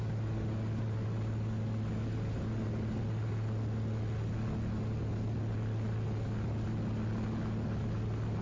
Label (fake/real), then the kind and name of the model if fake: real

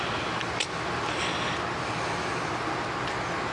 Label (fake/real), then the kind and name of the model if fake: real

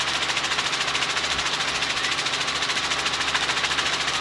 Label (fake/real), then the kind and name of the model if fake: real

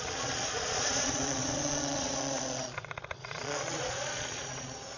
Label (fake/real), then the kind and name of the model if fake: fake, vocoder, Vocos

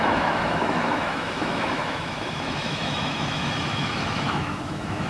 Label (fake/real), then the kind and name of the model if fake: fake, autoencoder, DAC-VAE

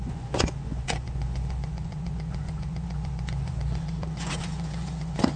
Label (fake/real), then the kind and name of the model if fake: fake, vocoder, Vocos